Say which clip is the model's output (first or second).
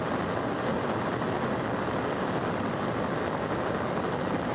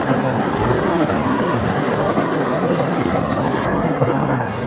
second